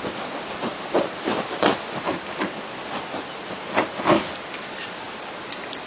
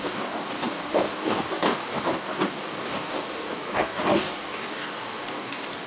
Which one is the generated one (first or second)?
second